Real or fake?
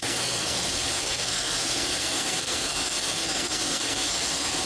fake